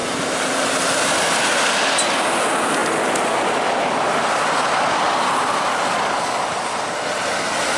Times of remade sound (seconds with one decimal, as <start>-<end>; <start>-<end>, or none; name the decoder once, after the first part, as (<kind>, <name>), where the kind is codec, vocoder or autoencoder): 0.0-0.5 (vocoder, BigVGAN v2)